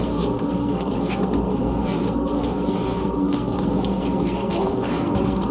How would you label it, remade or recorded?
remade